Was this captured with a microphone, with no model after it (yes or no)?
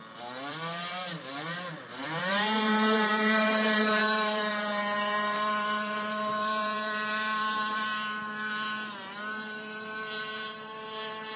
no